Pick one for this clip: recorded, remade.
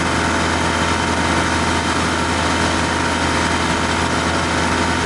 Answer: recorded